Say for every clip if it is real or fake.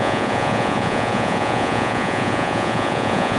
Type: fake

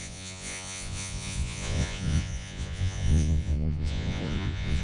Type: fake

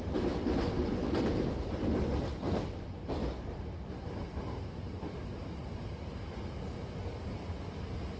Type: real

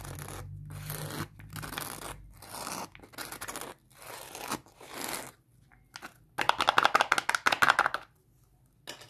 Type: real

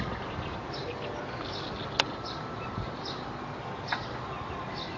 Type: real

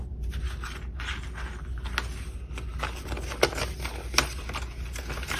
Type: real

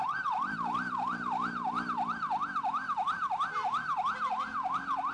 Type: real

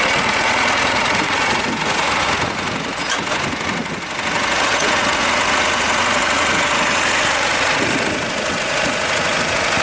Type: fake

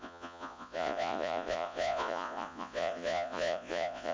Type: fake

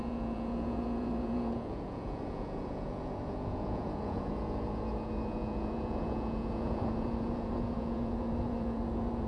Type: fake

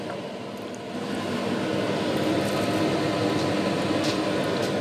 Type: real